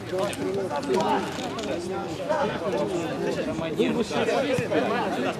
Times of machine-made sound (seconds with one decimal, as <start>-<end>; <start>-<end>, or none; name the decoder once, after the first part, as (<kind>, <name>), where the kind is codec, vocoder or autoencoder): 2.0-2.6 (codec, SNAC)